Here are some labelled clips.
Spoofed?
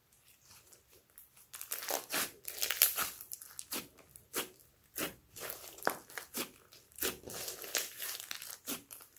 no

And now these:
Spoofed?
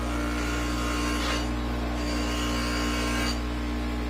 no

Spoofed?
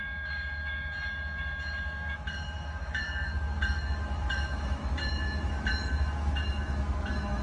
yes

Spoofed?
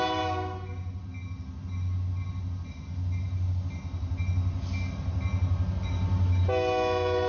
no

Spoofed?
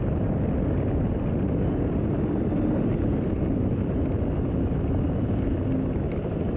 yes